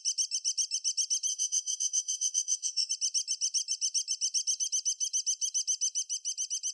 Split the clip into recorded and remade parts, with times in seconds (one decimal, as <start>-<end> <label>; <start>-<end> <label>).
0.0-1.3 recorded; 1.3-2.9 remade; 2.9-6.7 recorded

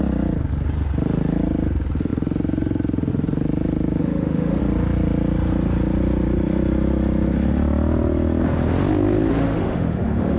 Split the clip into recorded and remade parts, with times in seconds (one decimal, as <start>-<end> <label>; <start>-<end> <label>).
0.0-4.0 recorded; 4.0-4.6 remade; 4.6-9.4 recorded; 9.4-10.4 remade

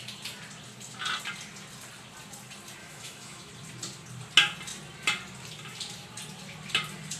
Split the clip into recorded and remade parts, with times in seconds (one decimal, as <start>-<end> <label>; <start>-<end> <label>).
0.0-2.8 recorded; 2.8-3.5 remade; 3.5-7.2 recorded